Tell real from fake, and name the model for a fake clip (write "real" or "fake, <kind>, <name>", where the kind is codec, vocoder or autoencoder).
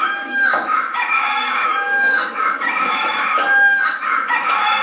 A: fake, autoencoder, DAC-VAE